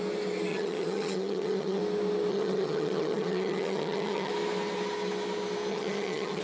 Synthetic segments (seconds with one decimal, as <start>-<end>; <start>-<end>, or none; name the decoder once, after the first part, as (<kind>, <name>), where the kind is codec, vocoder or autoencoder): 0.5-1.8 (vocoder, HiFi-GAN); 2.3-4.3; 5.7-6.4